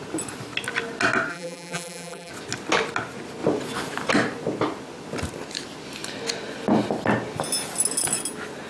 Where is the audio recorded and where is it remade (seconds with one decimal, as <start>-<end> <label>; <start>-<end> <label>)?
0.0-1.3 recorded; 1.3-2.3 remade; 2.3-8.7 recorded